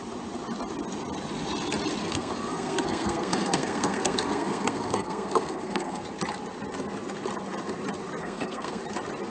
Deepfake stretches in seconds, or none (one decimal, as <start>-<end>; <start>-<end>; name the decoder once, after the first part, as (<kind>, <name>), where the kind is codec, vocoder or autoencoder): 2.0-6.0 (codec, SNAC); 8.2-8.8